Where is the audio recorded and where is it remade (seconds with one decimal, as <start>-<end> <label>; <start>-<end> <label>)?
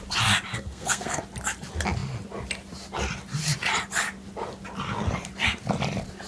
0.0-0.5 recorded; 0.5-1.2 remade; 1.2-6.3 recorded